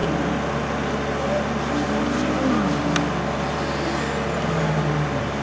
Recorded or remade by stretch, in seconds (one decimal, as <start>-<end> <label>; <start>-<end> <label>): 0.0-5.4 recorded